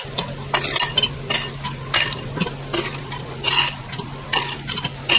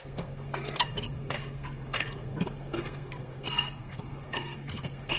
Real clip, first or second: first